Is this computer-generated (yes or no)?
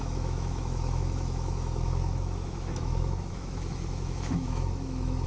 yes